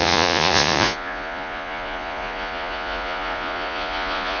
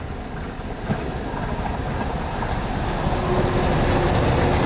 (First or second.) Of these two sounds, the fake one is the first